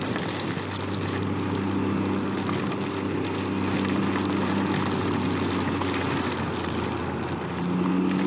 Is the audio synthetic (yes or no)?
no